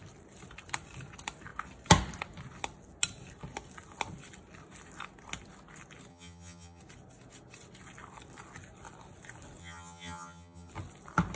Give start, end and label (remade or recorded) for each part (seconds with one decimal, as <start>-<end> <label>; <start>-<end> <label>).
0.0-6.1 recorded; 6.1-6.8 remade; 6.8-9.6 recorded; 9.6-10.7 remade; 10.7-11.4 recorded